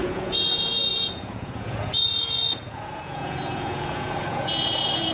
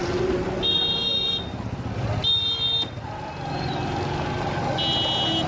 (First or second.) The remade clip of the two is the first